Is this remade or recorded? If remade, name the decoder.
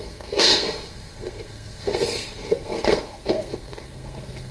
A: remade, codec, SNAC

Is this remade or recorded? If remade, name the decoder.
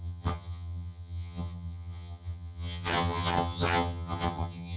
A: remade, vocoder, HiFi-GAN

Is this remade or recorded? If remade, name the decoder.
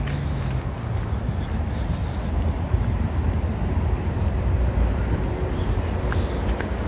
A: recorded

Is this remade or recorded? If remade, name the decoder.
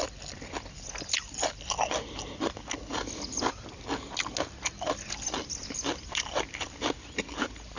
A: recorded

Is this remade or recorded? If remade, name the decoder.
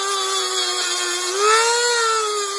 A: recorded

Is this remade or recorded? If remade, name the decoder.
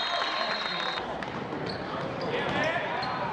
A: recorded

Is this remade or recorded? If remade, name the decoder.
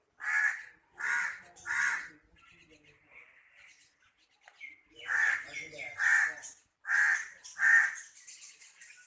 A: recorded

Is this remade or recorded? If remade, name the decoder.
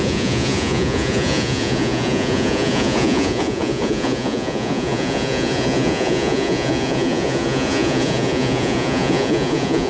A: remade, vocoder, Vocos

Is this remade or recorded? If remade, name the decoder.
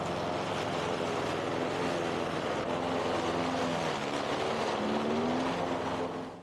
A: recorded